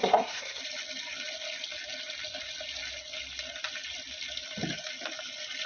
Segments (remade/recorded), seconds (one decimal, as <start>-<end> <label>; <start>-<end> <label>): 0.0-0.6 remade; 0.6-5.7 recorded